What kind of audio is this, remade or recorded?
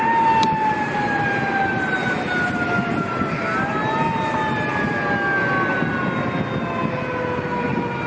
recorded